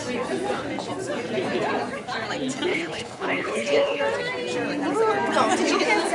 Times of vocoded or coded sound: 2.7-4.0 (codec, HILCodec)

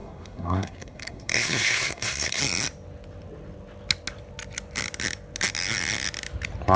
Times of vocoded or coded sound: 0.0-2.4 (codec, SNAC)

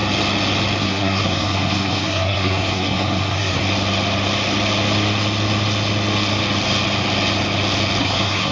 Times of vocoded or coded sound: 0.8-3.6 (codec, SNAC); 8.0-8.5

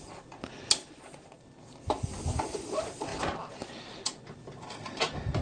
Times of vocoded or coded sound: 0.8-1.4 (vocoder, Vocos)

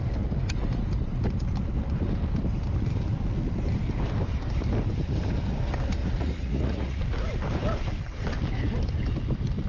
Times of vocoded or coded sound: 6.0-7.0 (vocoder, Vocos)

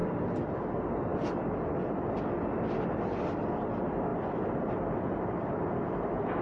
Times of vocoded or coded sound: none